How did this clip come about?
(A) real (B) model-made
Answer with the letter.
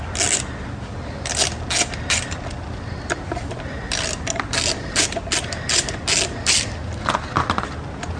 A